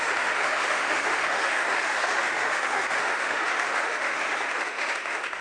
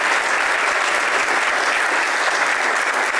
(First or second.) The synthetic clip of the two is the first